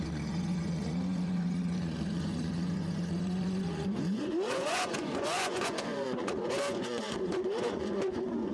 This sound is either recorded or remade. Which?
remade